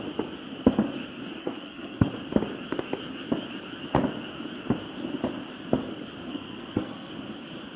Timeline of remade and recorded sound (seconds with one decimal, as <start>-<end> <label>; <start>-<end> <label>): 0.0-1.4 recorded; 1.4-2.1 remade; 2.1-6.3 recorded; 6.3-7.1 remade; 7.1-7.8 recorded